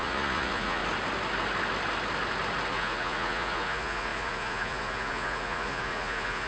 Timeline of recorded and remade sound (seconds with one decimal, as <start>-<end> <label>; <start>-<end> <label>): 0.0-0.8 remade; 0.8-2.7 recorded; 2.7-6.5 remade